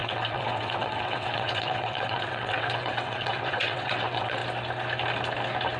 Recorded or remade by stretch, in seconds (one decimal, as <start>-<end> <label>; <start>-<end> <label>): 0.0-4.4 remade; 4.4-5.8 recorded